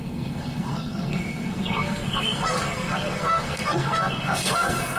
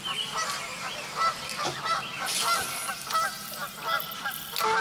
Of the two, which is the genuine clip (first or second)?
second